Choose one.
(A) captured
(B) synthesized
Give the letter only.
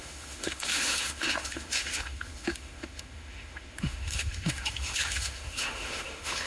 B